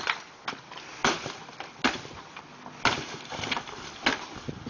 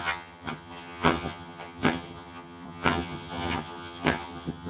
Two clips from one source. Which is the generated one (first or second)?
second